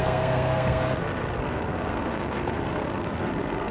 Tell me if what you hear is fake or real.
fake